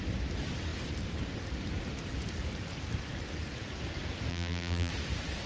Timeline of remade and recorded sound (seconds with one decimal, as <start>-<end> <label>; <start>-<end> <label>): 0.0-4.3 recorded; 4.3-4.9 remade; 4.9-5.5 recorded